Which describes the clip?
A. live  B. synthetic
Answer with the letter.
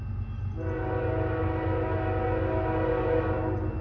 A